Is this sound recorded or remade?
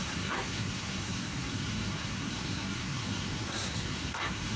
remade